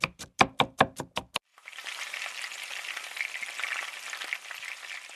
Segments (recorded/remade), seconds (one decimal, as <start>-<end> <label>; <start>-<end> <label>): 0.0-1.5 recorded; 1.5-2.2 remade; 2.2-5.2 recorded